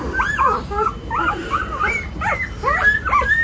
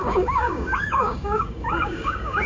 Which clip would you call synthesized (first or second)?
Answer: second